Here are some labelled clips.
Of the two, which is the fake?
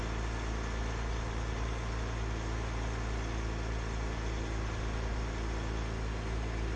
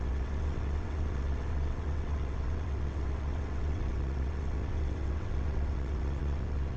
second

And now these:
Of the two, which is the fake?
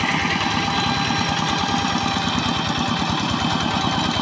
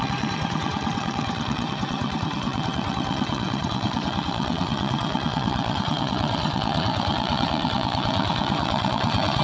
second